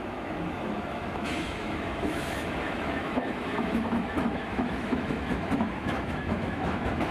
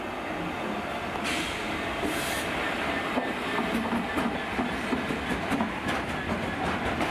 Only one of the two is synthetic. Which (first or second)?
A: first